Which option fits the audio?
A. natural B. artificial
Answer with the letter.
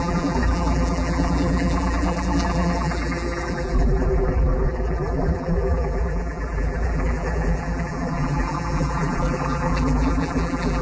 B